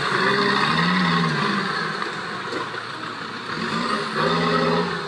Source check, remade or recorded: recorded